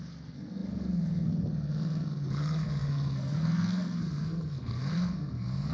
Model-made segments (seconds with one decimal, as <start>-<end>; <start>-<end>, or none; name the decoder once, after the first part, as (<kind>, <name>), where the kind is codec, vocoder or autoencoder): 0.0-5.7 (codec, SNAC)